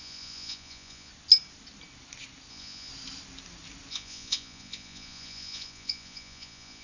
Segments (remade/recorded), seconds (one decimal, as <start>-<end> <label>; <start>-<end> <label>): 0.0-1.1 remade; 1.1-2.5 recorded; 2.5-2.9 remade; 2.9-3.9 recorded; 3.9-6.8 remade